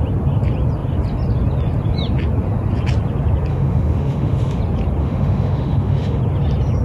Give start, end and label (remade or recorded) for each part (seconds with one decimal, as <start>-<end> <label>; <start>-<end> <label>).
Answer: 0.0-3.5 recorded; 3.5-4.6 remade; 4.6-5.0 recorded; 5.0-6.2 remade; 6.2-6.8 recorded